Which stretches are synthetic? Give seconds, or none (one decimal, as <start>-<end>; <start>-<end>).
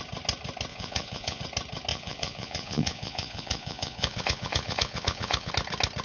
0.7-1.4; 1.9-5.5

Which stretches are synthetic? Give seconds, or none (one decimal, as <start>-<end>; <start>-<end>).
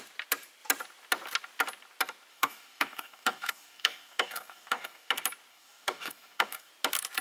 2.3-5.1; 5.5-6.7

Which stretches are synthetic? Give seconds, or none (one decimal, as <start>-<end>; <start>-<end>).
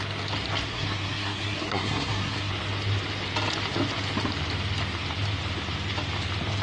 0.7-2.5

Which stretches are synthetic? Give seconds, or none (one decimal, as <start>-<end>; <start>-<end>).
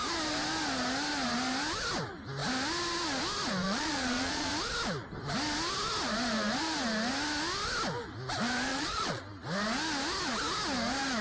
3.6-4.5; 8.7-9.2